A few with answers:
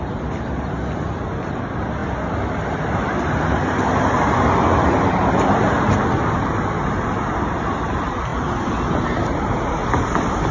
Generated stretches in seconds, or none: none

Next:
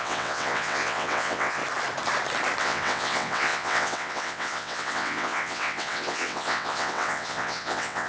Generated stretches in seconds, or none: 0.0-1.6 (vocoder, WaveNeXt); 2.6-8.1

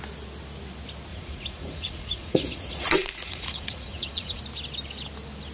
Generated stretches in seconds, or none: 1.1-4.4 (vocoder, Vocos)

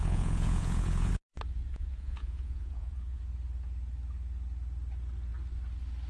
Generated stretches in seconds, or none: 0.0-1.1 (vocoder, Vocos); 1.7-3.2

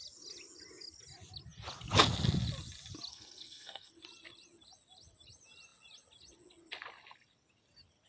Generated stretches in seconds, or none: 3.1-3.9 (codec, SNAC)

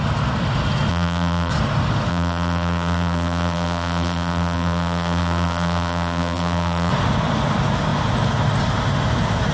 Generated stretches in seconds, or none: 0.9-1.5 (vocoder, BigVGAN v2); 2.1-6.9

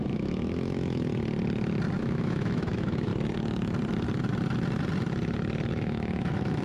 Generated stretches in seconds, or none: 0.0-1.1 (autoencoder, DAC-VAE); 2.0-3.1; 5.7-6.6

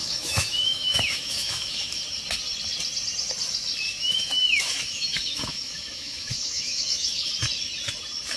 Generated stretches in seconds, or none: 0.0-2.0 (autoencoder, DAC-VAE); 4.0-7.3